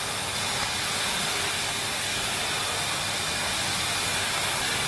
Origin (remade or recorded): recorded